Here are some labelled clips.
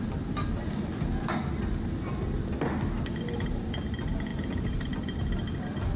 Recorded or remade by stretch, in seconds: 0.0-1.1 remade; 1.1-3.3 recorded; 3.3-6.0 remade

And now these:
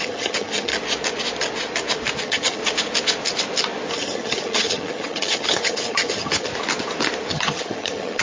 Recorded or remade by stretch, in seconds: 0.0-0.7 remade; 0.7-2.2 recorded; 2.2-2.6 remade; 2.6-3.9 recorded; 3.9-6.5 remade; 6.5-7.3 recorded; 7.3-8.2 remade

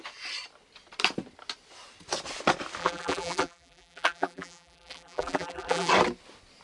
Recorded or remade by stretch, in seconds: 0.0-2.8 recorded; 2.8-5.9 remade; 5.9-6.6 recorded

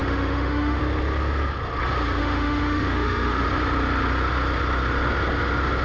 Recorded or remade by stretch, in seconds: 0.0-0.8 remade; 0.8-2.2 recorded; 2.2-3.5 remade; 3.5-5.8 recorded

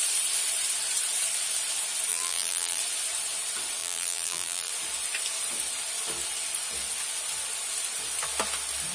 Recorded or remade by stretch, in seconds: 0.0-2.1 recorded; 2.1-2.8 remade; 2.8-3.8 recorded; 3.8-4.7 remade; 4.7-8.9 recorded